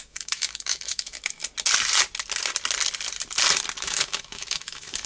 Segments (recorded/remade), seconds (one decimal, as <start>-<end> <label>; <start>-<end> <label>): 0.0-1.4 remade; 1.4-3.8 recorded; 3.8-5.1 remade